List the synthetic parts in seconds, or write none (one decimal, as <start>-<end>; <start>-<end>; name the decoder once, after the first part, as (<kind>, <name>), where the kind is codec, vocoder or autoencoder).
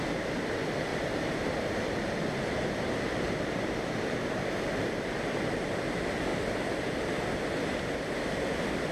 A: 0.9-5.7 (vocoder, BigVGAN v2)